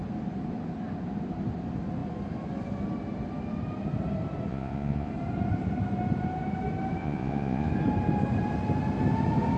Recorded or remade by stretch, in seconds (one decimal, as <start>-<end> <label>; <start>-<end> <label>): 0.0-4.5 recorded; 4.5-5.1 remade; 5.1-7.0 recorded; 7.0-7.7 remade; 7.7-9.6 recorded